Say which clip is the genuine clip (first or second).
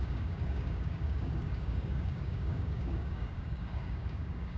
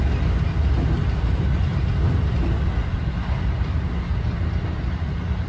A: second